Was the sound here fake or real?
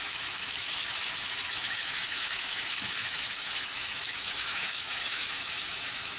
fake